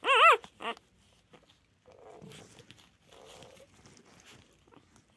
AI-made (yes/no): no